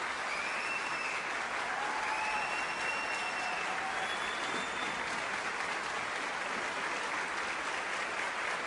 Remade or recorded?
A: recorded